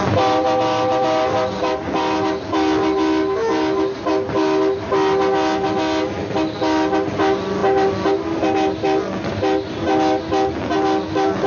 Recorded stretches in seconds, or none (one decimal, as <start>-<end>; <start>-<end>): 0.0-11.5